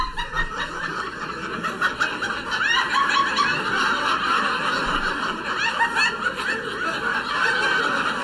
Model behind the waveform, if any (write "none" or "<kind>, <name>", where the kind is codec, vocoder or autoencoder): none